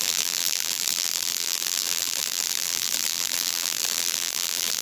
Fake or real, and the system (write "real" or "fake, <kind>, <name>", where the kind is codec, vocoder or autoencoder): fake, vocoder, BigVGAN v2